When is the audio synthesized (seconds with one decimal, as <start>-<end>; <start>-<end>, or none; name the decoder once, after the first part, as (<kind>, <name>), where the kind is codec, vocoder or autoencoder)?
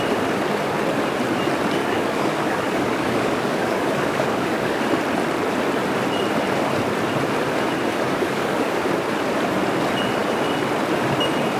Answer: 1.8-4.8 (codec, DAC); 7.9-8.8